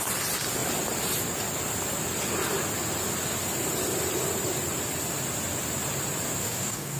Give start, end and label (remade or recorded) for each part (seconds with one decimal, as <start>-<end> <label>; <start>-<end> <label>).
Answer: 0.0-6.4 recorded; 6.4-7.0 remade

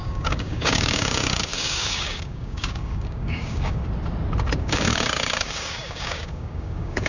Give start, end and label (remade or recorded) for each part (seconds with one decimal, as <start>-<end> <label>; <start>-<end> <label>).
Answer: 0.0-3.8 remade; 3.8-4.6 recorded; 4.6-7.1 remade